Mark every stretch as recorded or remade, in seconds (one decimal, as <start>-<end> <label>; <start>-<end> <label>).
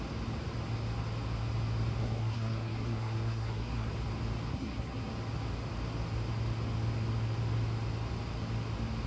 0.0-2.0 recorded; 2.0-3.9 remade; 3.9-4.5 recorded; 4.5-5.1 remade; 5.1-9.1 recorded